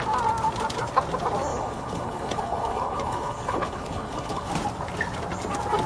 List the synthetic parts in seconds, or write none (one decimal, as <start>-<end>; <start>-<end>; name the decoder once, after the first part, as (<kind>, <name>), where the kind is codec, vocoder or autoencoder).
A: 1.5-4.5 (codec, HILCodec)